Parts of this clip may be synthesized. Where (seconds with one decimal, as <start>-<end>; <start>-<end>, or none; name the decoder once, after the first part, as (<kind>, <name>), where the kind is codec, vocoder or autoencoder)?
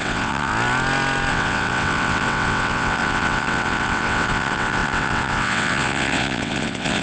0.0-0.5 (vocoder, WaveNeXt); 1.3-7.0